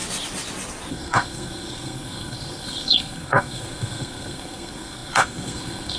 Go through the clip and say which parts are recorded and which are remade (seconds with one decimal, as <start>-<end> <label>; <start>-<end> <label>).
0.0-0.9 recorded; 0.9-6.0 remade